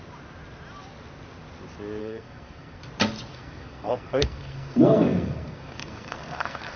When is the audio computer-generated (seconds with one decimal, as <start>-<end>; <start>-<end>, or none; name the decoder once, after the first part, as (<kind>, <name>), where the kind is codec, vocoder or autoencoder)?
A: 2.0-2.8 (codec, SNAC); 3.3-6.8